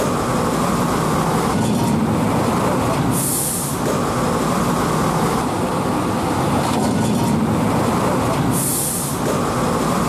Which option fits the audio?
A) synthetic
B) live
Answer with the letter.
B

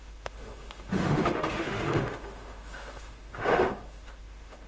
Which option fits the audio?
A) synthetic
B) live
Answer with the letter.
A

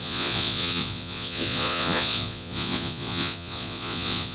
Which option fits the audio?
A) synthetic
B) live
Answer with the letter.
A